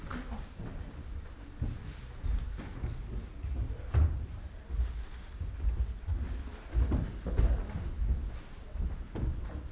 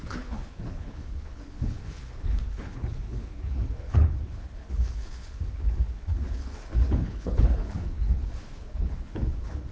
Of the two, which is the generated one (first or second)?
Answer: second